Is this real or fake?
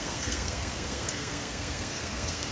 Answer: fake